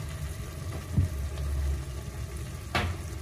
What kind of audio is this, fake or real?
real